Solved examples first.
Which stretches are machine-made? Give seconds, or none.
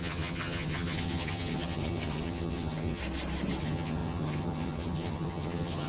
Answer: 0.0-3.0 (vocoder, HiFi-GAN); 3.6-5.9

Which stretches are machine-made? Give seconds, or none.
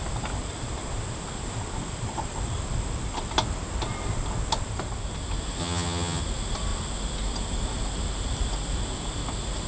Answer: 5.6-6.2 (vocoder, HiFi-GAN)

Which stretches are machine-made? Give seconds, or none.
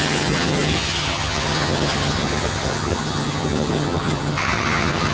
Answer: 0.0-5.1 (vocoder, HiFi-GAN)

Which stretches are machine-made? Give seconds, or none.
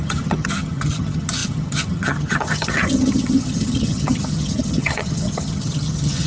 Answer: 0.0-6.3 (vocoder, HiFi-GAN)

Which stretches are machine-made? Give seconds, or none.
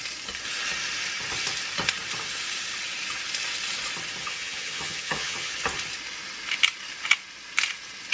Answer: 4.2-5.5 (vocoder, HiFi-GAN)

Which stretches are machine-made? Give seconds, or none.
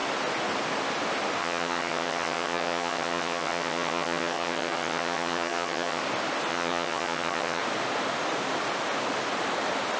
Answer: 1.4-6.0 (vocoder, HiFi-GAN); 6.5-7.6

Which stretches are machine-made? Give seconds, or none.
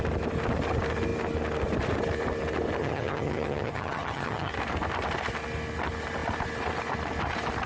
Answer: 2.8-4.5 (vocoder, HiFi-GAN)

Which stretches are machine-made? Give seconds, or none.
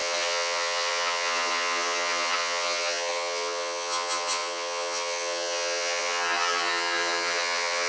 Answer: 0.0-7.9 (vocoder, HiFi-GAN)